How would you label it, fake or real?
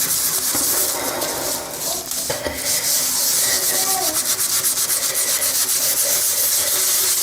real